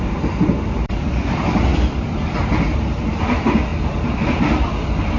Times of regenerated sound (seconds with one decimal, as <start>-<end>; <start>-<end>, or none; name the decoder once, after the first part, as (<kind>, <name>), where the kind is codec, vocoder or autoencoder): 0.0-5.2 (vocoder, BigVGAN v2)